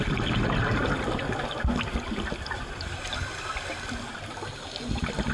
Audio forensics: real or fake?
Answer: real